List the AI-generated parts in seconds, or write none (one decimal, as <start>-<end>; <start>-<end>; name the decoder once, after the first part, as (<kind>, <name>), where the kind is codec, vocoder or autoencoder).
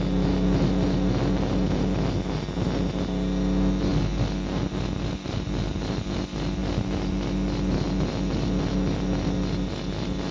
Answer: none